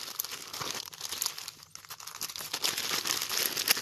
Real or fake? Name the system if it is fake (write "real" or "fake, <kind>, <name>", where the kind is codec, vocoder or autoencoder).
real